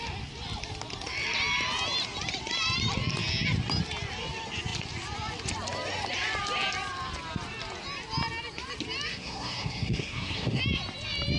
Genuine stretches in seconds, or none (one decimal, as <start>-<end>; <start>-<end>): 0.0-9.1; 10.6-11.4